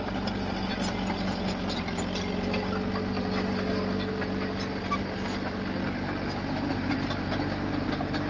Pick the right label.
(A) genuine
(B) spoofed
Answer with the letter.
A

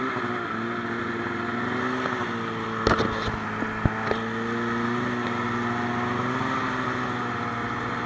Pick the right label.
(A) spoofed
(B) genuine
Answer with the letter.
B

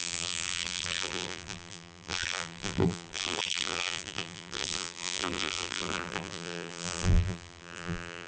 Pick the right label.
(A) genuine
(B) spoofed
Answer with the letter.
B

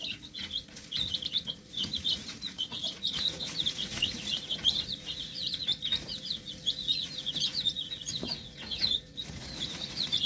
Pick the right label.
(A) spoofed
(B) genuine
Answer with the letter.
A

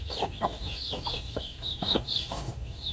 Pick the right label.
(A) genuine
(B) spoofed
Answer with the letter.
B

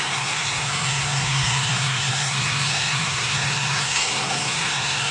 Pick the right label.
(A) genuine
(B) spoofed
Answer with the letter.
B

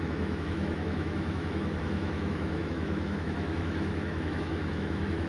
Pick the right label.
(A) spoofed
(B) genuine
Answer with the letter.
A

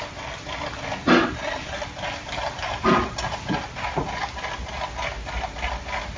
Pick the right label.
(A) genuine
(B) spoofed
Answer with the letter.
A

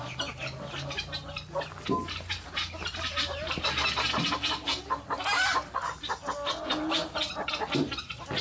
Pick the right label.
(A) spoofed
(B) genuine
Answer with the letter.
B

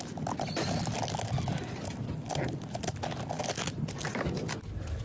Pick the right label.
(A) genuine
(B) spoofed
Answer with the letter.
A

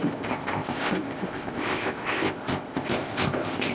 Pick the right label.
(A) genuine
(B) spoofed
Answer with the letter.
B